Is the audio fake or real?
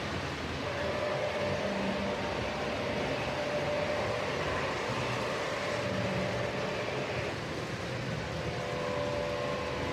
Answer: real